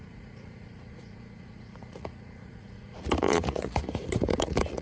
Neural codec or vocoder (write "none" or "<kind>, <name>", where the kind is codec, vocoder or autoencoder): vocoder, Vocos